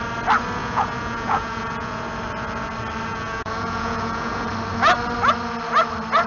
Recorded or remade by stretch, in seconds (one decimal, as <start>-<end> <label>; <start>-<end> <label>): 0.0-0.6 recorded; 0.6-2.0 remade; 2.0-3.1 recorded; 3.1-4.5 remade; 4.5-6.3 recorded